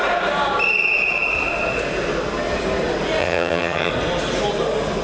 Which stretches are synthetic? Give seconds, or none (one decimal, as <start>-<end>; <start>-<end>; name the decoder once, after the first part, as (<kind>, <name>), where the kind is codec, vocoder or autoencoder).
3.2-3.9 (vocoder, HiFi-GAN)

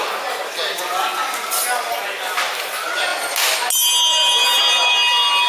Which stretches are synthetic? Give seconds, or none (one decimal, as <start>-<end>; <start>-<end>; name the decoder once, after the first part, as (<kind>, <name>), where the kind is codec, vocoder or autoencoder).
none

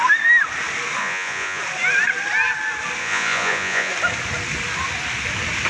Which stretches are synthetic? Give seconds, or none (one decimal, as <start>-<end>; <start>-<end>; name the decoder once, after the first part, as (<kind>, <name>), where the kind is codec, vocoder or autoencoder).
1.0-1.6 (vocoder, Vocos); 3.0-3.9

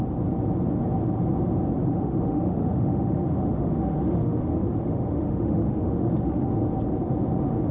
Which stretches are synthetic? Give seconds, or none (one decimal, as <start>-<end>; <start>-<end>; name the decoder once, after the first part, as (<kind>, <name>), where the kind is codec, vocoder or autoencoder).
1.9-6.5 (autoencoder, DAC-VAE)

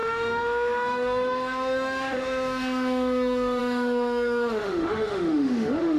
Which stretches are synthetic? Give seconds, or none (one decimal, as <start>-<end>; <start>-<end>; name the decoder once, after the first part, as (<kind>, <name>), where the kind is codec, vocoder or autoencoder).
0.0-6.0 (autoencoder, DAC-VAE)

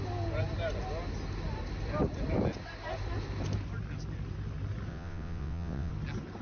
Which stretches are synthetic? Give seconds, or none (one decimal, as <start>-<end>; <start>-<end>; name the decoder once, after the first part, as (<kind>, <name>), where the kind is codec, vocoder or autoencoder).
4.9-5.9 (vocoder, WaveNeXt)

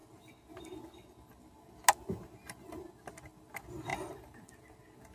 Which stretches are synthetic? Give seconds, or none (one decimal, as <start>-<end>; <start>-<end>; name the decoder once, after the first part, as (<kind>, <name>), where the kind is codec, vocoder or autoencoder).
none